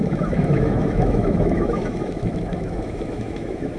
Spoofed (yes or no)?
yes